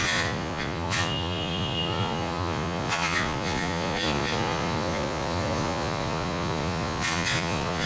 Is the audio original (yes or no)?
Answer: no